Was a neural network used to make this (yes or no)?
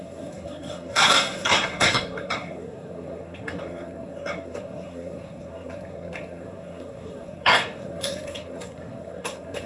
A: yes